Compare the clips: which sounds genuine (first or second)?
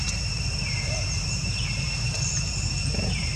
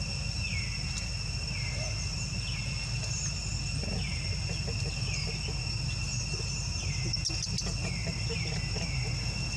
second